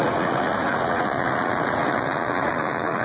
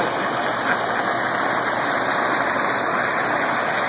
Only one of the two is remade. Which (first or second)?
first